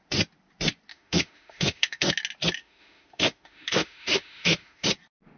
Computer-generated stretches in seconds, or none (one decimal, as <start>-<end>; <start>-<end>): 0.9-2.1; 2.6-4.9